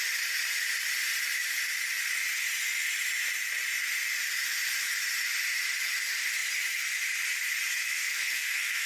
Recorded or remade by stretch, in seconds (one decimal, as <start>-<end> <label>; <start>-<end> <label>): 0.0-7.8 recorded; 7.8-8.9 remade